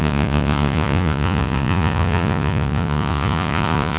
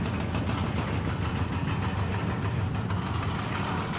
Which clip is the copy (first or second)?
first